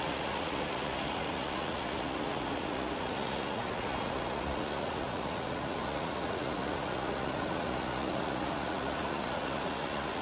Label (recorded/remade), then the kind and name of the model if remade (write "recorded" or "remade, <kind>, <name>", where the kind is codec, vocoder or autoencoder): remade, vocoder, Vocos